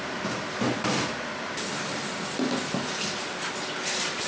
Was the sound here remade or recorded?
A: recorded